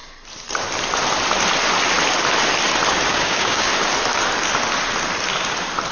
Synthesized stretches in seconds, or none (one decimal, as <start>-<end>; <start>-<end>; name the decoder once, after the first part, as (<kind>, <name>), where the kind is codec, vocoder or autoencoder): 3.1-3.7 (codec, DAC)